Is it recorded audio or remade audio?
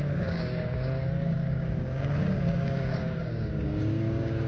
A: remade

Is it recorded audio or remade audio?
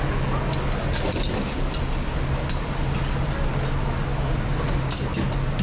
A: recorded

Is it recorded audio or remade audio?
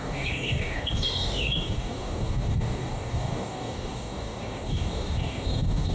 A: remade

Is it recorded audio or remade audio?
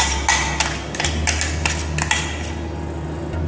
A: recorded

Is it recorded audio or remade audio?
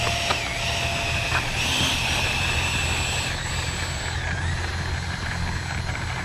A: recorded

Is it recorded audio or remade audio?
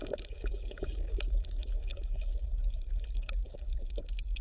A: remade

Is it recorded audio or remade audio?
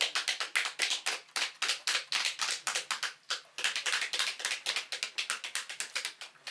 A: recorded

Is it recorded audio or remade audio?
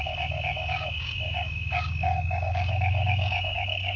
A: remade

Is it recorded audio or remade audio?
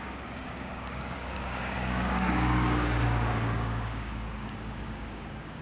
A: remade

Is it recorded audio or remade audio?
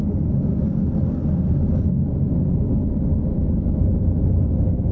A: recorded